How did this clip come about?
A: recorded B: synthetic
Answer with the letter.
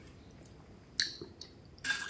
A